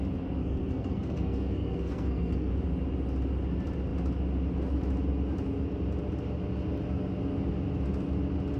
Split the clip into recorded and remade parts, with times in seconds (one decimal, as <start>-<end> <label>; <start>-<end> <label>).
0.0-0.4 recorded; 0.4-2.5 remade; 2.5-8.6 recorded